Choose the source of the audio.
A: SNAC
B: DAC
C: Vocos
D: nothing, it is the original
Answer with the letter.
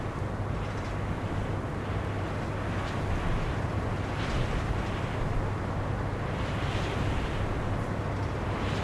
D